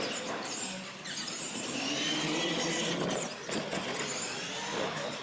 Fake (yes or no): no